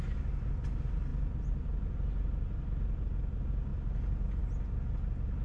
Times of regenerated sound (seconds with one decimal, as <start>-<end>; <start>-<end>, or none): none